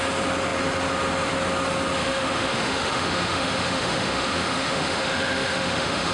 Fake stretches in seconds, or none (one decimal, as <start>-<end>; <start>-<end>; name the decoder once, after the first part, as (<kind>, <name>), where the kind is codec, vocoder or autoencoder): 2.0-6.1 (autoencoder, DAC-VAE)